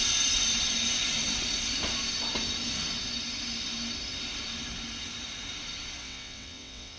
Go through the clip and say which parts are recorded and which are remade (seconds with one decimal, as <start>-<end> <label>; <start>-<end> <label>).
0.0-6.0 recorded; 6.0-7.0 remade